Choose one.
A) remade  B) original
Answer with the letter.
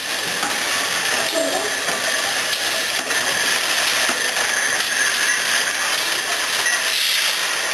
B